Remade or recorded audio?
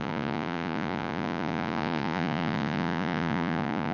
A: remade